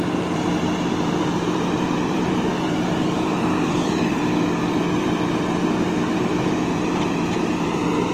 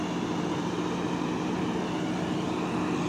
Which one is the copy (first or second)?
first